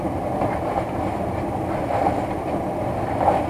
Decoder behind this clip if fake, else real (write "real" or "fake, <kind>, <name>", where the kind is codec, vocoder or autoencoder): fake, vocoder, BigVGAN v2